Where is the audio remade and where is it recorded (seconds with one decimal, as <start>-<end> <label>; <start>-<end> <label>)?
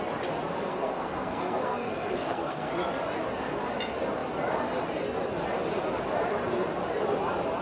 0.0-0.5 recorded; 0.5-2.7 remade; 2.7-7.6 recorded